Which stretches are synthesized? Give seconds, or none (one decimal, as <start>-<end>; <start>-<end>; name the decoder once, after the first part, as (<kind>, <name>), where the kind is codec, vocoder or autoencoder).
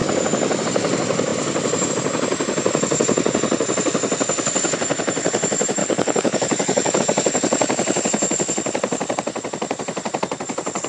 5.8-7.0 (codec, DAC)